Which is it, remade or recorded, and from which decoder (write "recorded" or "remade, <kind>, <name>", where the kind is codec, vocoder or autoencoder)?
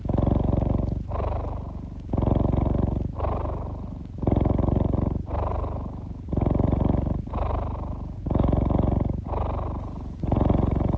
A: recorded